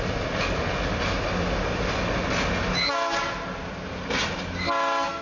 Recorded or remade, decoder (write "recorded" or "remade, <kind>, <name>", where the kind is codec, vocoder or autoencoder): recorded